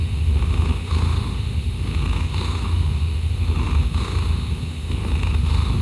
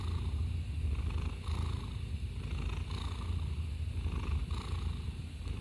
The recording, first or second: second